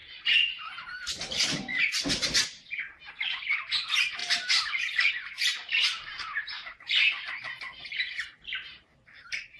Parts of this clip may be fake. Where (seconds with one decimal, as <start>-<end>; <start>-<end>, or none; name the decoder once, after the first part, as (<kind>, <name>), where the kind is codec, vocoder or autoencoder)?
0.0-6.7 (vocoder, BigVGAN v2); 7.8-9.6